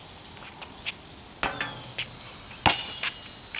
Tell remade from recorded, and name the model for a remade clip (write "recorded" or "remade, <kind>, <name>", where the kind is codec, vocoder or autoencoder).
recorded